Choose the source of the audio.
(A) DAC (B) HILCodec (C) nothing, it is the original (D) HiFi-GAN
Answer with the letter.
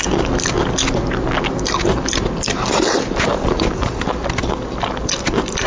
C